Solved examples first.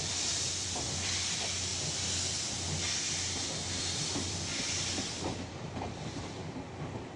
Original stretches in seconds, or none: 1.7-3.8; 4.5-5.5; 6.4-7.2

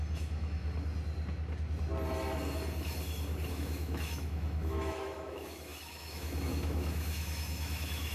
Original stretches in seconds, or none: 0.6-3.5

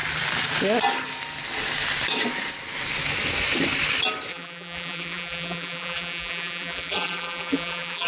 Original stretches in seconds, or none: 0.0-4.3

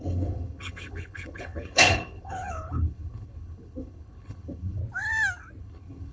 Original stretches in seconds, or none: 4.8-5.6

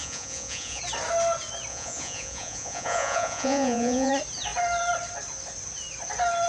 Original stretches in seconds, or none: 0.8-1.7; 4.1-6.5

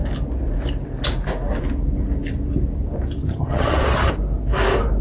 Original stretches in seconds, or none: 0.0-3.2; 4.1-5.0

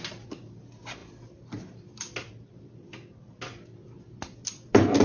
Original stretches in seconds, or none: 0.0-5.0

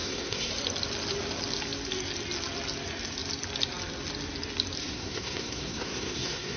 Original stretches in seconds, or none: 0.5-4.8